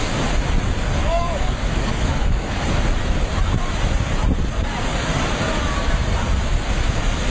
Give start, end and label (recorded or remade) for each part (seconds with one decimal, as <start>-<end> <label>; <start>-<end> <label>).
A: 0.0-1.0 recorded; 1.0-2.6 remade; 2.6-7.3 recorded